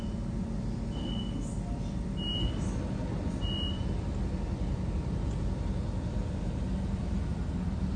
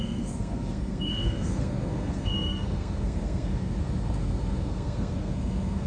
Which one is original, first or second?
first